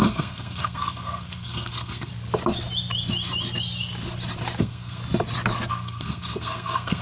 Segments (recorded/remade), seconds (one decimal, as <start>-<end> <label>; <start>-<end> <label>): 0.0-2.1 remade; 2.1-4.6 recorded; 4.6-5.0 remade; 5.0-5.7 recorded; 5.7-7.0 remade